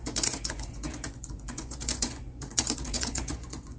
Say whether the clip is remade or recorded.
remade